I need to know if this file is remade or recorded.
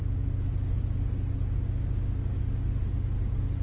recorded